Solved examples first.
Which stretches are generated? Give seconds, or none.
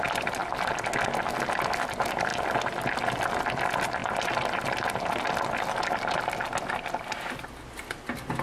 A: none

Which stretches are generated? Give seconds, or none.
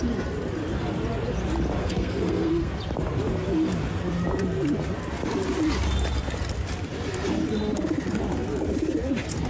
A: 1.8-2.7 (codec, SNAC)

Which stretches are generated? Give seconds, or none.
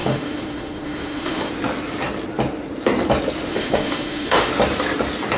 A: 0.0-1.5 (autoencoder, DAC-VAE); 3.5-4.5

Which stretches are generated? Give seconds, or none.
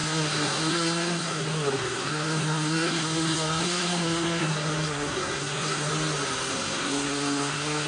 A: 0.0-5.9 (codec, SNAC); 6.5-7.9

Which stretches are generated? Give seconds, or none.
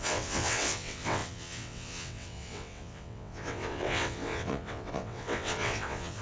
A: 0.0-6.2 (vocoder, WaveNeXt)